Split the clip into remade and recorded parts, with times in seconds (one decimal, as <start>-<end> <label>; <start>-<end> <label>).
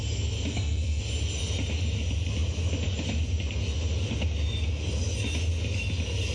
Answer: 0.0-0.5 recorded; 0.5-1.0 remade; 1.0-6.3 recorded